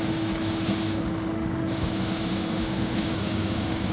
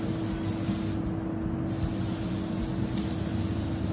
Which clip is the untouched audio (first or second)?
second